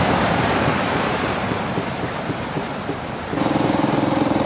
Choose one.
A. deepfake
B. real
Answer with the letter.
A